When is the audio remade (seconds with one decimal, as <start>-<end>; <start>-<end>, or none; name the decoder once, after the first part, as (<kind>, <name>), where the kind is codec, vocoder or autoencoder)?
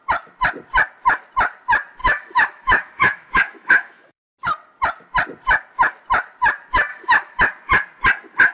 2.0-4.2 (autoencoder, DAC-VAE); 6.9-7.4